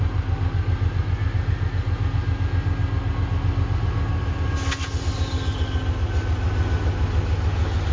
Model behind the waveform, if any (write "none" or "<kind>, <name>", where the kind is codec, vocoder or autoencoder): none